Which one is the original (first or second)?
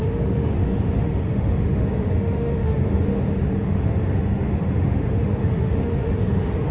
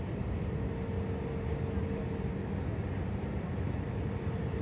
second